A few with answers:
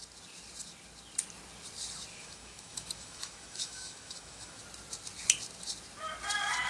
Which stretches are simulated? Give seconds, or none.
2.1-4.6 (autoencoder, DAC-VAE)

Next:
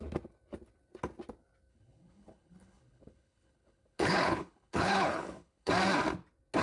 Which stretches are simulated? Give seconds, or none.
1.7-5.7 (codec, HILCodec)

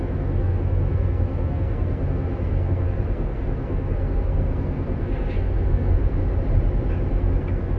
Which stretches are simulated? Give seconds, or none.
0.0-6.2 (codec, SNAC); 7.1-7.8

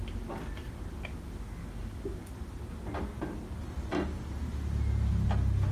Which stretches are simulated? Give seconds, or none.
1.6-2.2 (autoencoder, DAC-VAE)

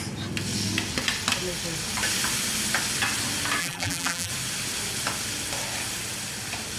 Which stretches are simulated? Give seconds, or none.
3.6-4.3 (vocoder, BigVGAN v2)

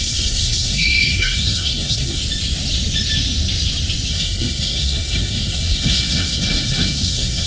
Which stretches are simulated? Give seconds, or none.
0.0-2.2 (codec, SNAC); 4.1-7.5

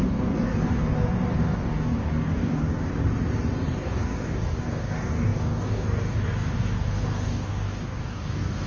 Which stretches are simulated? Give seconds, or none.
0.0-0.9 (codec, DAC); 1.4-2.9; 3.8-8.7

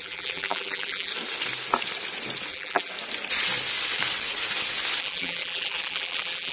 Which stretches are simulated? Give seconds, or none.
0.0-1.1 (vocoder, BigVGAN v2); 2.5-2.9; 5.0-6.5